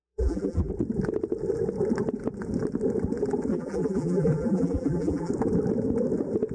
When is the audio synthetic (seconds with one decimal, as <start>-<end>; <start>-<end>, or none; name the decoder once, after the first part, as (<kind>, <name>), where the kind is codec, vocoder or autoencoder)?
0.0-0.7 (vocoder, BigVGAN v2); 3.5-5.3